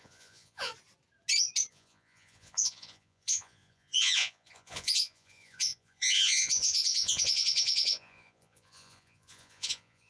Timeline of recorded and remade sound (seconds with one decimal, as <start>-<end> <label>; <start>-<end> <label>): 0.0-0.7 remade; 0.7-1.7 recorded; 1.7-10.1 remade